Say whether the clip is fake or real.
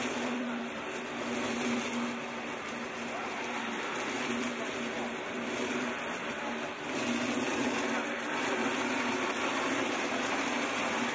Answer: fake